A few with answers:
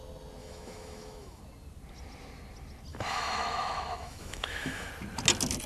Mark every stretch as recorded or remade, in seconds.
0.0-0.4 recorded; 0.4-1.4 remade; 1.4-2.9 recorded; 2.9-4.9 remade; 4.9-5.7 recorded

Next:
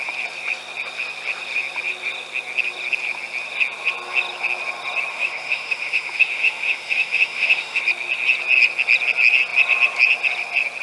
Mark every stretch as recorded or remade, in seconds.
0.0-5.1 recorded; 5.1-7.8 remade; 7.8-10.8 recorded

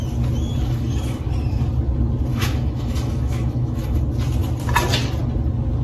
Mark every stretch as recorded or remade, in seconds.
0.0-0.5 recorded; 0.5-1.3 remade; 1.3-2.3 recorded; 2.3-4.0 remade; 4.0-5.8 recorded

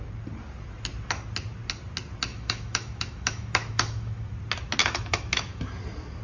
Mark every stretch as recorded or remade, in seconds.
0.0-2.3 recorded; 2.3-4.3 remade; 4.3-4.8 recorded; 4.8-5.7 remade; 5.7-6.2 recorded

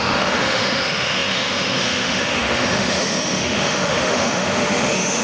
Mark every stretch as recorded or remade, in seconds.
0.0-5.2 remade

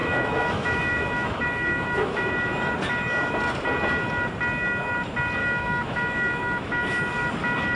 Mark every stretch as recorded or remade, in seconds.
0.0-2.3 remade; 2.3-5.4 recorded; 5.4-7.0 remade; 7.0-7.8 recorded